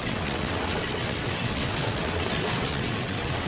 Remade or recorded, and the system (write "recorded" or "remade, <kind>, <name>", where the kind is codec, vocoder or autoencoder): remade, vocoder, WaveNeXt